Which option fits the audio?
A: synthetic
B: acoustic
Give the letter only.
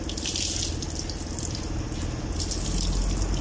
B